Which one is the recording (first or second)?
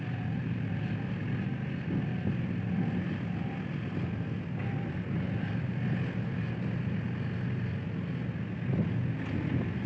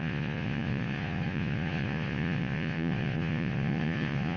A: first